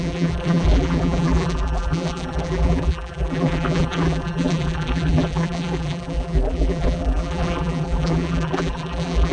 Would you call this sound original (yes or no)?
no